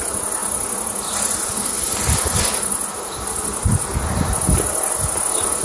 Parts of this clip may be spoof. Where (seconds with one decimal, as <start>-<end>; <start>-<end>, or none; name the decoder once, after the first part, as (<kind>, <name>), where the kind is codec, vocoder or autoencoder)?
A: none